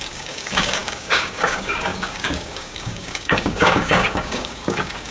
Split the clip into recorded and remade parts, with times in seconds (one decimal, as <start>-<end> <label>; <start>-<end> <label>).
0.0-5.1 remade